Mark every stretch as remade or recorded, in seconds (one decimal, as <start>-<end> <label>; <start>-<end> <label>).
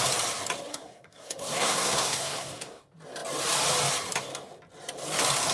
0.0-0.7 recorded; 0.7-2.8 remade; 2.8-5.5 recorded